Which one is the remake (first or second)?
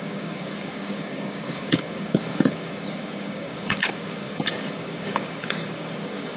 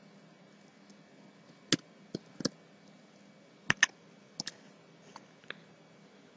first